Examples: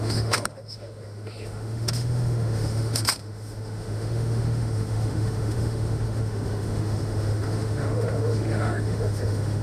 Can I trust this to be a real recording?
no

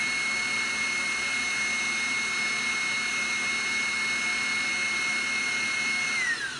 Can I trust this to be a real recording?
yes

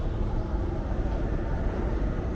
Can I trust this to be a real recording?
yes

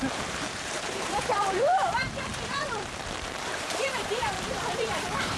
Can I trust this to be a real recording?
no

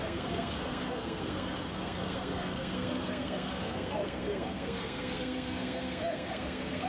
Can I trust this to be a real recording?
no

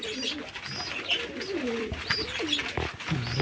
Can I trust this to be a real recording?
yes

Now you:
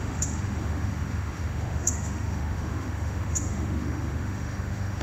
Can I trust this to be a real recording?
no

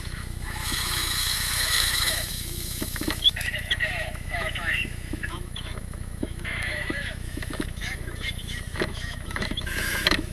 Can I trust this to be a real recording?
no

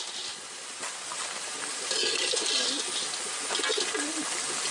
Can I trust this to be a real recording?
yes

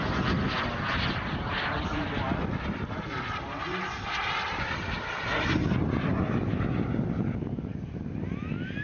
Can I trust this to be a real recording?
yes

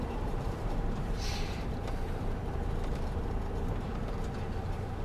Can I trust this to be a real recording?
no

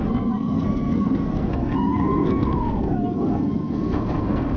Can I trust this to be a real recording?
no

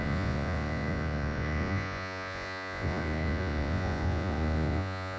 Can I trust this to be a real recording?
no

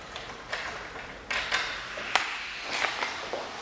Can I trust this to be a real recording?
yes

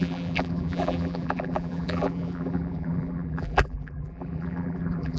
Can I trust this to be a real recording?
no